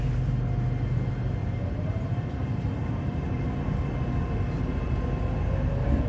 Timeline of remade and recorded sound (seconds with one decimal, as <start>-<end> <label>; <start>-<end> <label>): 0.0-1.4 recorded; 1.4-3.5 remade; 3.5-6.1 recorded